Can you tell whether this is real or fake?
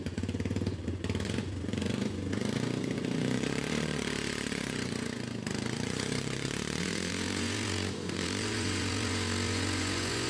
fake